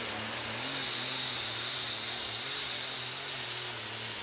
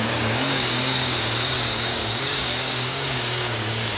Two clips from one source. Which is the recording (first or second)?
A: first